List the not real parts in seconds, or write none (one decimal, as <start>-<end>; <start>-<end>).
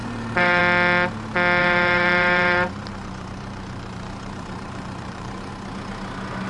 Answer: 0.0-0.6; 1.6-5.5